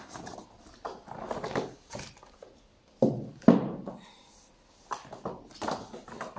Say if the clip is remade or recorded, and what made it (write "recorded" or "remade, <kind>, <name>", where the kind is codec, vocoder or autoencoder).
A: recorded